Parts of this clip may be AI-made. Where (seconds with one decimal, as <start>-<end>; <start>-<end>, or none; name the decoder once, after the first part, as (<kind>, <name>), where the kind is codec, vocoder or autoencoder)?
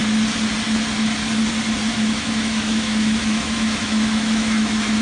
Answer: 1.9-5.0 (autoencoder, DAC-VAE)